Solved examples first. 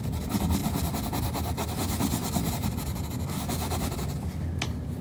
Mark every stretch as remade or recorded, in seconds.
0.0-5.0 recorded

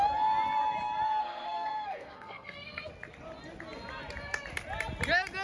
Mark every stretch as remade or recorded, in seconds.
0.0-1.2 recorded; 1.2-2.9 remade; 2.9-5.4 recorded

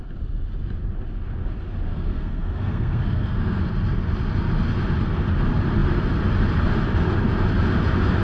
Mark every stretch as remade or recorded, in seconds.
0.0-1.9 recorded; 1.9-3.6 remade; 3.6-8.2 recorded

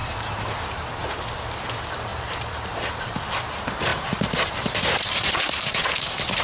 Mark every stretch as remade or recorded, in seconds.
0.0-1.2 remade; 1.2-2.1 recorded; 2.1-3.0 remade; 3.0-3.9 recorded; 3.9-6.4 remade